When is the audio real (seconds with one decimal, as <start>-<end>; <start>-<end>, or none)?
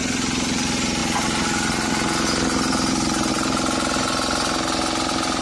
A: 0.0-5.4